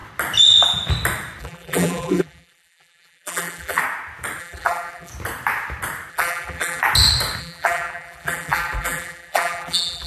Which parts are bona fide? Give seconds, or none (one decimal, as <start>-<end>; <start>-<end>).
0.0-1.4; 3.8-4.4; 5.1-6.1; 6.8-7.4